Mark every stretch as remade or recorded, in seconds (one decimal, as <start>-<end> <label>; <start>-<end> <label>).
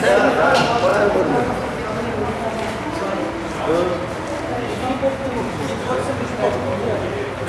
0.0-7.5 recorded